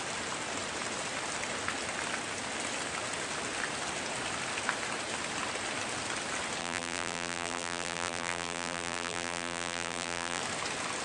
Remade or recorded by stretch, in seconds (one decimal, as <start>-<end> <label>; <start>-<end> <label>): 0.0-6.6 recorded; 6.6-10.4 remade; 10.4-11.0 recorded